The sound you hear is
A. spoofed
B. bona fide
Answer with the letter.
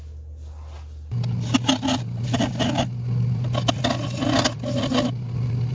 B